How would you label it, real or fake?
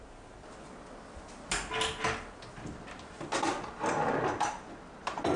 real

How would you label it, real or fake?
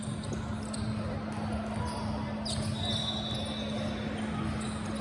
real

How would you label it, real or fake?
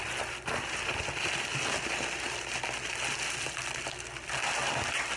real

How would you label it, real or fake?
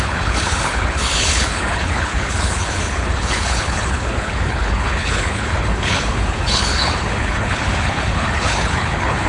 fake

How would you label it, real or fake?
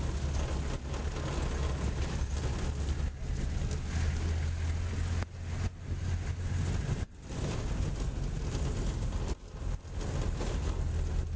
real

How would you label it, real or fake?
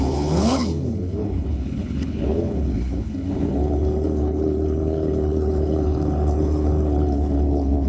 fake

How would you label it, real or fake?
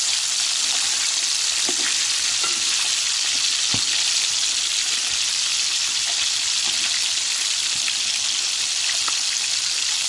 real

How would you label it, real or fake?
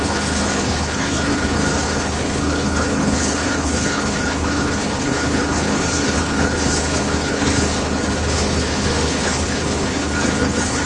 fake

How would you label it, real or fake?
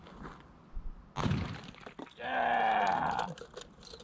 real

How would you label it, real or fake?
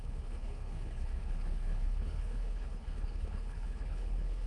fake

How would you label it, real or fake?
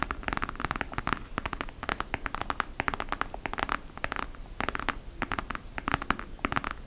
real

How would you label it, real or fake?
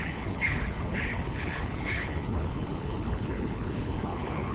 fake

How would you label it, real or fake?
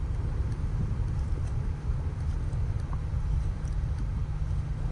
real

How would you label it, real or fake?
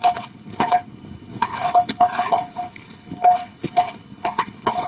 fake